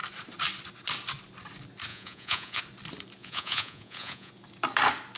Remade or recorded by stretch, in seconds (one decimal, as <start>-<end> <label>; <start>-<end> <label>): 0.0-1.9 recorded; 1.9-2.6 remade; 2.6-3.2 recorded; 3.2-4.3 remade; 4.3-5.2 recorded